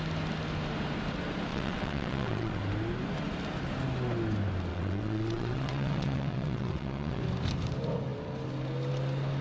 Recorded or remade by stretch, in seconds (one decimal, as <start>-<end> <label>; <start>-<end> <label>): 0.0-1.5 recorded; 1.5-2.6 remade; 2.6-4.7 recorded; 4.7-7.2 remade; 7.2-9.4 recorded